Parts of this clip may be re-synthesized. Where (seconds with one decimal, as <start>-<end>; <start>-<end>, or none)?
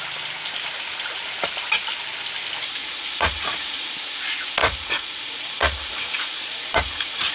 2.8-3.9; 4.6-7.3